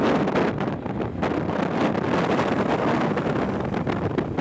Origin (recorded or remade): recorded